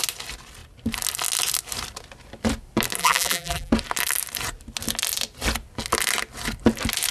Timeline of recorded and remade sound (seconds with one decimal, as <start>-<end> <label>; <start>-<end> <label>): 0.0-3.0 recorded; 3.0-3.7 remade; 3.7-7.1 recorded